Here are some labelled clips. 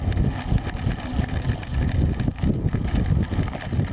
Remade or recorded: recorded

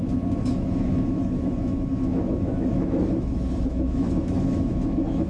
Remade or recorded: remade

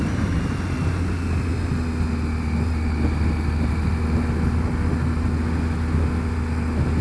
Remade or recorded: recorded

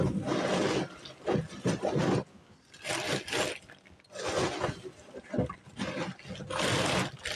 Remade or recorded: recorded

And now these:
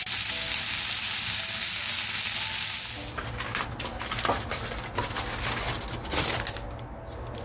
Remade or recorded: recorded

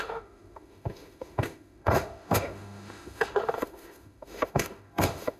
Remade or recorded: remade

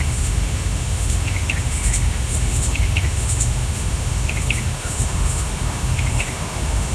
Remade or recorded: remade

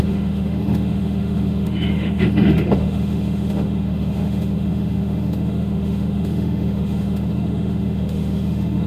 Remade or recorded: remade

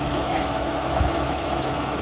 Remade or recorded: remade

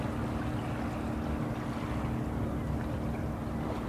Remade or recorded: recorded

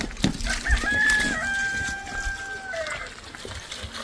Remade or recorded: recorded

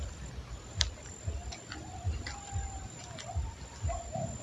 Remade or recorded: recorded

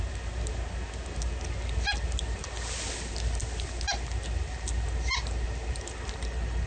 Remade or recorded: recorded